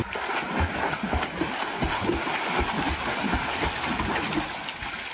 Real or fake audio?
real